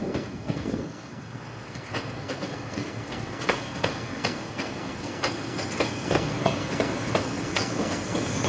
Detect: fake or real fake